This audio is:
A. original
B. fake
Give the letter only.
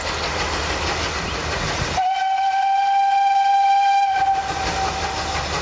A